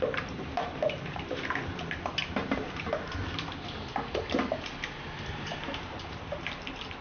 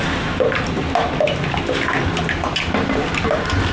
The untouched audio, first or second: second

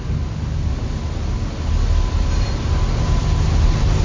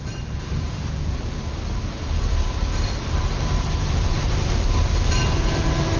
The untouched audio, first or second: first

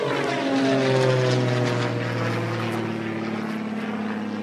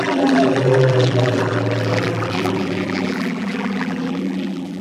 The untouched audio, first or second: first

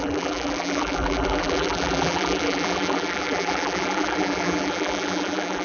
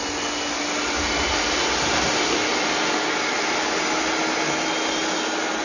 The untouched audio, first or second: second